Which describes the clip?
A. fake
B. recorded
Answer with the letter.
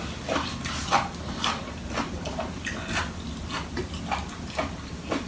B